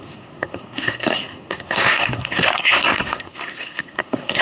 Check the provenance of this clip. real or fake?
fake